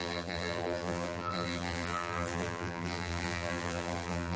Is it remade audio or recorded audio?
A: remade